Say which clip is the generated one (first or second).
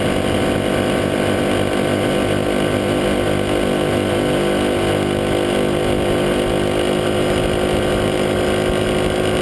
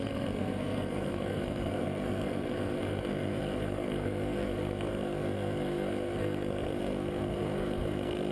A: second